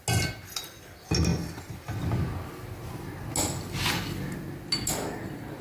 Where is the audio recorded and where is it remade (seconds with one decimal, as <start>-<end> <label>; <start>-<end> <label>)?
0.0-5.6 recorded